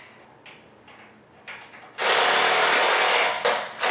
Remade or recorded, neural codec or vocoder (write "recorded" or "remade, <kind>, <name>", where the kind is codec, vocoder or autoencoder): recorded